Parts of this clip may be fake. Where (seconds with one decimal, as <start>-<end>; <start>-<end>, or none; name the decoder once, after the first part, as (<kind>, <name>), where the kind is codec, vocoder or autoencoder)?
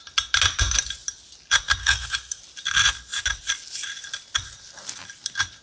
1.8-2.4 (codec, SNAC)